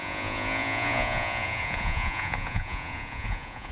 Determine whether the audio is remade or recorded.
remade